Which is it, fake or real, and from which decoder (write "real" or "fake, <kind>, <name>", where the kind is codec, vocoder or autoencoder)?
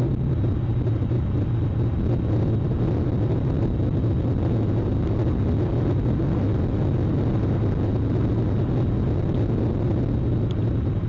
real